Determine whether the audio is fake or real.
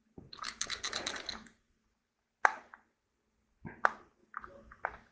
real